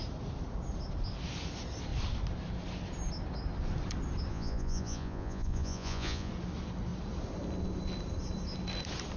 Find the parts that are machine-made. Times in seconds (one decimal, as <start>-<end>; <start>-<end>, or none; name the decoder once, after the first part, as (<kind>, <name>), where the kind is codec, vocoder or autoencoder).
4.3-6.3 (vocoder, Vocos)